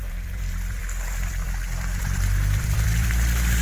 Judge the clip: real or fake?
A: fake